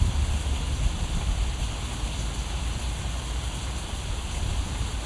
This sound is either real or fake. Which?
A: real